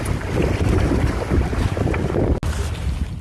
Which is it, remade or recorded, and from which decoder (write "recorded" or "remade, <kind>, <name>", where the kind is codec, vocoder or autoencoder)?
recorded